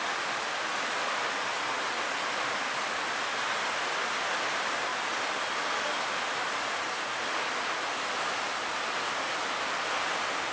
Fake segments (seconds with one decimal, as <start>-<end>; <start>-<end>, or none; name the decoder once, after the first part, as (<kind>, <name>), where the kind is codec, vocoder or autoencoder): none